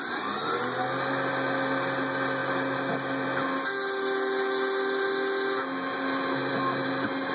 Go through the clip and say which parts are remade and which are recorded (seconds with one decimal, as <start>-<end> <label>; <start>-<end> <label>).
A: 0.0-7.3 recorded